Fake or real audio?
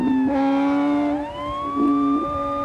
real